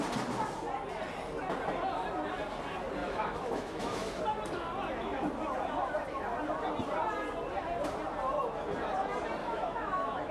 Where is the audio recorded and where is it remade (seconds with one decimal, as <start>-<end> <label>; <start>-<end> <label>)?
0.0-3.0 recorded; 3.0-4.2 remade; 4.2-9.4 recorded; 9.4-10.3 remade